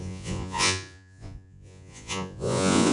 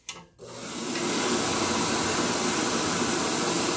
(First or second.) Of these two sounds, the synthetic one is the first